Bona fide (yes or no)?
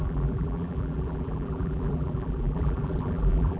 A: no